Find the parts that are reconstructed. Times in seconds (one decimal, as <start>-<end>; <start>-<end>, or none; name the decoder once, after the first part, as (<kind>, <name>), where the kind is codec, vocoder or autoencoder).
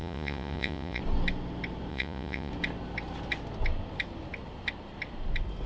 0.0-1.0 (vocoder, Vocos); 1.9-2.5